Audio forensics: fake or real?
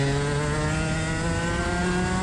real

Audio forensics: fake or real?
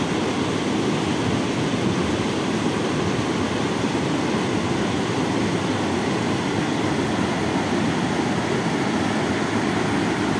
real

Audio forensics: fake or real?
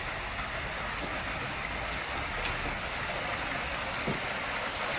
real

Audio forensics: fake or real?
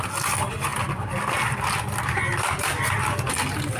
real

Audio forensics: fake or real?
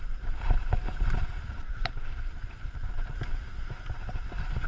fake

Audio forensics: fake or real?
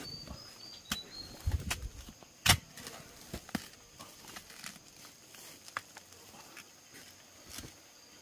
real